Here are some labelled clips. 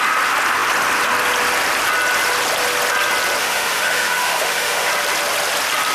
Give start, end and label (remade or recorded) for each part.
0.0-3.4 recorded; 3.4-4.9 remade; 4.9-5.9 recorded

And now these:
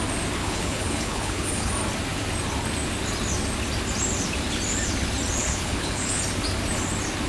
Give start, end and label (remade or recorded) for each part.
0.0-0.4 recorded; 0.4-1.7 remade; 1.7-5.4 recorded; 5.4-6.2 remade; 6.2-7.3 recorded

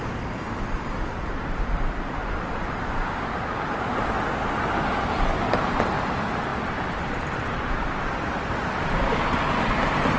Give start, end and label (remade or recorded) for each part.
0.0-10.2 recorded

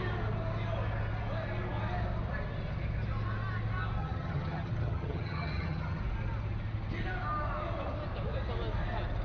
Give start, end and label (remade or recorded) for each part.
0.0-4.0 recorded; 4.0-6.0 remade; 6.0-9.2 recorded

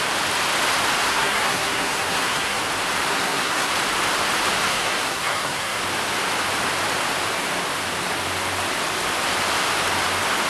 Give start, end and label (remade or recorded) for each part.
0.0-1.1 recorded; 1.1-2.6 remade; 2.6-3.1 recorded; 3.1-3.7 remade; 3.7-4.7 recorded; 4.7-5.8 remade; 5.8-10.5 recorded

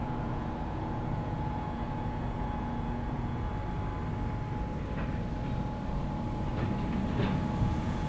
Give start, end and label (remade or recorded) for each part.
0.0-3.5 remade; 3.5-7.6 recorded; 7.6-8.1 remade